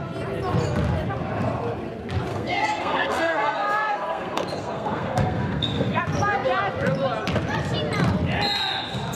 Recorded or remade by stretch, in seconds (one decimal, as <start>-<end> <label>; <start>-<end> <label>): 0.0-2.3 recorded; 2.3-6.0 remade; 6.0-9.1 recorded